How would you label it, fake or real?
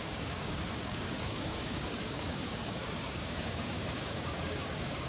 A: fake